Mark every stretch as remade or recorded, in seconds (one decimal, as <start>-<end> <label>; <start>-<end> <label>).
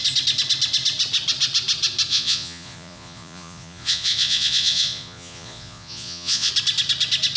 0.0-2.1 recorded; 2.1-6.5 remade; 6.5-7.4 recorded